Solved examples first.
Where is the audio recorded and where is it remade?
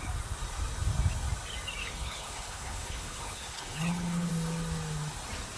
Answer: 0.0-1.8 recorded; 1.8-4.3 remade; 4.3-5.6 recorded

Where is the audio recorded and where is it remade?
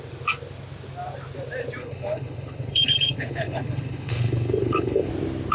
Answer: 0.0-1.8 recorded; 1.8-5.1 remade; 5.1-5.5 recorded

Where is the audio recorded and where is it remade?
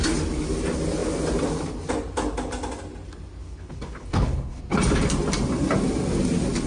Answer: 0.0-3.4 recorded; 3.4-4.6 remade; 4.6-6.7 recorded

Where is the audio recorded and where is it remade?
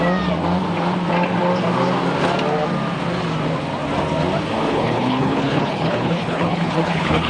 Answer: 0.0-4.7 recorded; 4.7-7.3 remade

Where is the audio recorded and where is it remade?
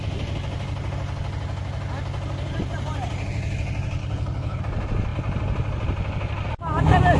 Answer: 0.0-4.0 recorded; 4.0-4.6 remade; 4.6-7.2 recorded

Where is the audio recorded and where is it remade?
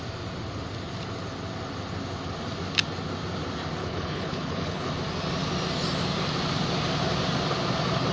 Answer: 0.0-3.8 recorded; 3.8-4.9 remade; 4.9-8.1 recorded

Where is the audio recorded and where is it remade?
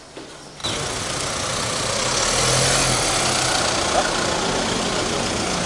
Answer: 0.0-5.7 recorded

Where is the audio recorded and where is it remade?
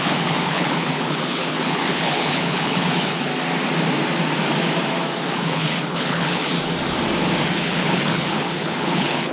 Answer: 0.0-3.3 remade; 3.3-5.3 recorded; 5.3-6.5 remade; 6.5-7.5 recorded; 7.5-9.3 remade